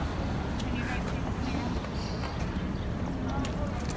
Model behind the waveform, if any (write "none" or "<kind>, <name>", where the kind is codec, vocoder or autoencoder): none